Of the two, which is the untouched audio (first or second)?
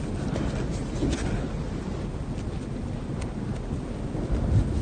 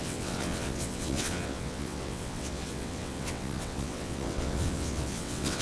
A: first